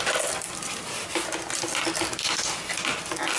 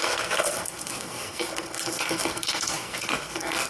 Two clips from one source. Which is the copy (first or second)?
second